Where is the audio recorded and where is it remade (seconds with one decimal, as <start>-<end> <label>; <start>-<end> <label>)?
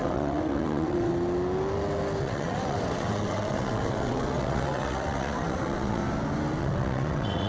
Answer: 0.0-1.1 remade; 1.1-2.2 recorded; 2.2-6.0 remade; 6.0-6.6 recorded; 6.6-7.5 remade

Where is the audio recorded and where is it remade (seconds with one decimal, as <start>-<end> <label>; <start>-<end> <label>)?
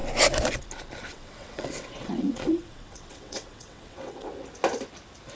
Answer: 0.0-1.1 recorded; 1.1-4.3 remade; 4.3-5.4 recorded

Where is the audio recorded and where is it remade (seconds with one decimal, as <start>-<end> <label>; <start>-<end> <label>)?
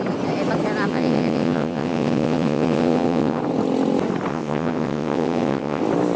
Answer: 0.0-0.9 recorded; 0.9-3.4 remade; 3.4-4.3 recorded; 4.3-5.8 remade; 5.8-6.2 recorded